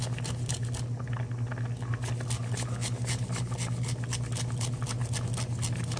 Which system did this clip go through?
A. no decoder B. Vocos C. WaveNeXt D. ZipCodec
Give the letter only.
A